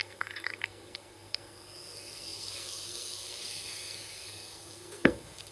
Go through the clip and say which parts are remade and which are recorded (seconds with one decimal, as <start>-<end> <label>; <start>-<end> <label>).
0.0-5.5 remade